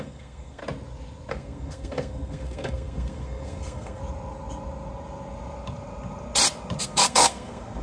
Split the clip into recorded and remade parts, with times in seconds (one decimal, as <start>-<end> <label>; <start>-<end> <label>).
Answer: 0.0-0.6 remade; 0.6-1.3 recorded; 1.3-4.0 remade; 4.0-6.8 recorded; 6.8-7.8 remade